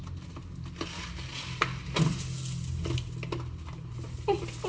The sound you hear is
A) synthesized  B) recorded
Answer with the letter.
B